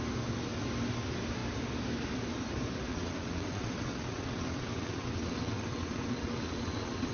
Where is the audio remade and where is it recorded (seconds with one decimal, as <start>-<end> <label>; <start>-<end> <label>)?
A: 0.0-2.9 recorded; 2.9-7.1 remade